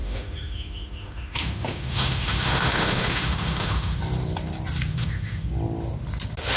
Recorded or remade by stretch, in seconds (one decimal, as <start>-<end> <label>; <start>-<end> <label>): 0.0-4.0 remade; 4.0-4.9 recorded; 4.9-5.5 remade; 5.5-6.6 recorded